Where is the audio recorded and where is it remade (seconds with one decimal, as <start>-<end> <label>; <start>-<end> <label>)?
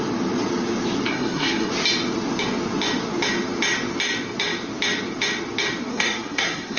0.0-1.1 recorded; 1.1-1.7 remade; 1.7-5.9 recorded; 5.9-6.8 remade